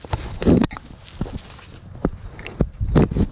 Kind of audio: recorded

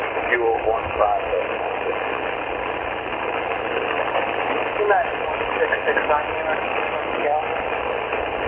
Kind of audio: recorded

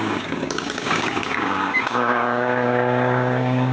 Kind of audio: remade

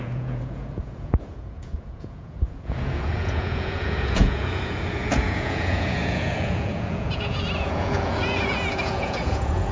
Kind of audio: remade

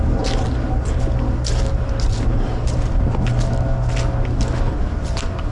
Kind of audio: recorded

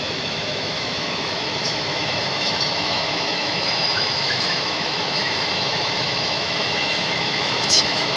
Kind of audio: remade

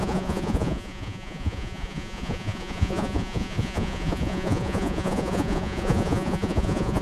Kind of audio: remade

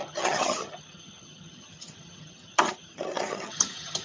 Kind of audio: remade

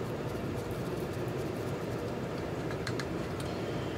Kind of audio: remade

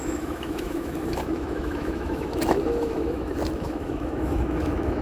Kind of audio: remade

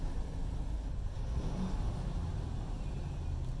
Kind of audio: recorded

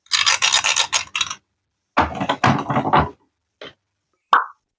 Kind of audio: recorded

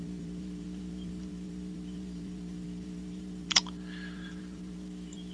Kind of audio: remade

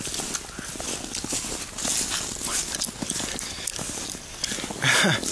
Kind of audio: recorded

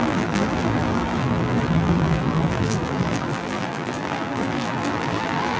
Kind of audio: remade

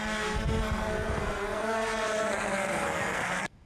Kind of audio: remade